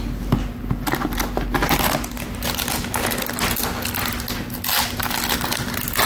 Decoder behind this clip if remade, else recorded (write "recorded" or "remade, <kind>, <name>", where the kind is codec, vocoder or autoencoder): recorded